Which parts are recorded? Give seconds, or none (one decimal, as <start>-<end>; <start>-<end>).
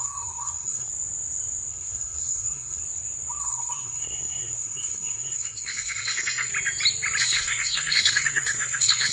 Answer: 0.9-1.7; 2.8-3.4; 6.5-7.2